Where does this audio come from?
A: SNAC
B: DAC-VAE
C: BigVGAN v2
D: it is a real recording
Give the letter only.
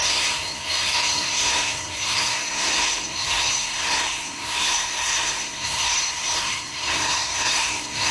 A